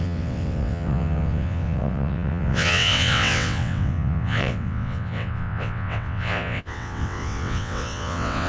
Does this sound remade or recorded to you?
remade